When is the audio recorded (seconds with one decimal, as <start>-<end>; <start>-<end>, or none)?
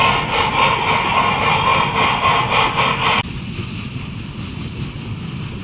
0.0-5.6